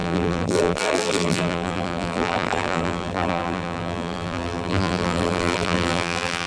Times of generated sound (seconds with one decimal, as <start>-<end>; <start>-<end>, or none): 0.0-6.5